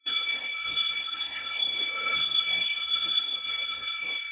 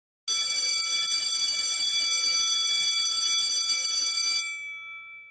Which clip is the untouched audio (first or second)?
second